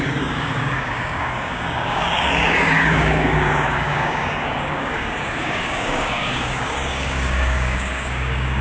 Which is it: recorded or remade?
remade